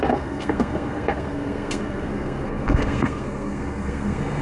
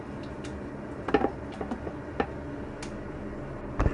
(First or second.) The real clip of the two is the second